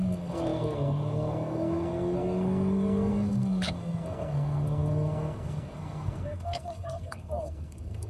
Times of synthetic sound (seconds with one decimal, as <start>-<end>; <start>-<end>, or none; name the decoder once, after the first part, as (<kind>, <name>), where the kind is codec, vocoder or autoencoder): 0.0-8.1 (codec, SNAC)